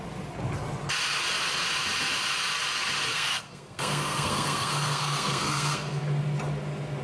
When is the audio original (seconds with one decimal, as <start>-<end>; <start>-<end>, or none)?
0.0-3.1; 6.0-7.0